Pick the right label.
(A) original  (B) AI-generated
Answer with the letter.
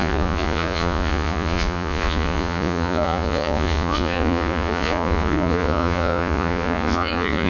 B